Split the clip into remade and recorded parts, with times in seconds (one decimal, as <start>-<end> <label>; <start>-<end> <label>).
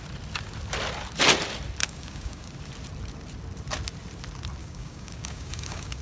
0.0-1.8 recorded; 1.8-2.5 remade; 2.5-4.6 recorded; 4.6-6.0 remade